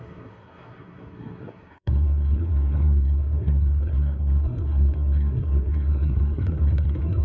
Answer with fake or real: fake